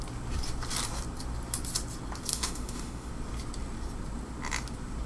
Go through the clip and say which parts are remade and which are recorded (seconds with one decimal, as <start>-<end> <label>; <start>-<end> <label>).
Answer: 0.0-2.3 recorded; 2.3-3.1 remade; 3.1-5.1 recorded